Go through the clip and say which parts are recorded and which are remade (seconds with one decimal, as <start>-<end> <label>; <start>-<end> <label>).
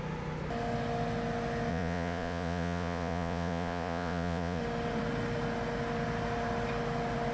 0.0-1.7 recorded; 1.7-4.6 remade; 4.6-7.3 recorded